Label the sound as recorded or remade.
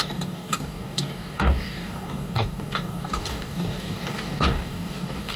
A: remade